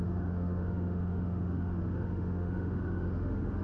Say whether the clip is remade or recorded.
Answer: remade